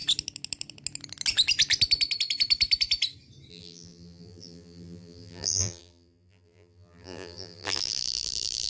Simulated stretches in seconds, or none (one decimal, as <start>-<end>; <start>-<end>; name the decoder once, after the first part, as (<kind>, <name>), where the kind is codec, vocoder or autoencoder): 3.5-8.7 (vocoder, BigVGAN v2)